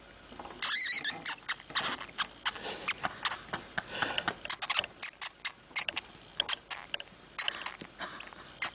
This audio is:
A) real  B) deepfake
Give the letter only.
A